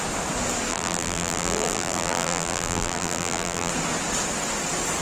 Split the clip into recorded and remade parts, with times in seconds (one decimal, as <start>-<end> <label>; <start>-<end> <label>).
0.0-0.7 recorded; 0.7-3.7 remade; 3.7-5.0 recorded